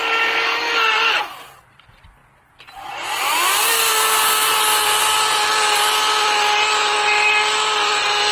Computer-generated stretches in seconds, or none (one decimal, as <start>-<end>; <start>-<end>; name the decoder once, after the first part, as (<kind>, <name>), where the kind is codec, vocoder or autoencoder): none